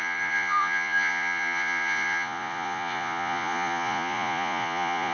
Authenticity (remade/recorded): remade